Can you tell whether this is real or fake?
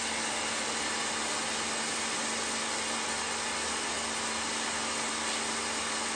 real